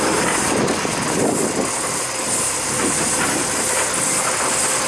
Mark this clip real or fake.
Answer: real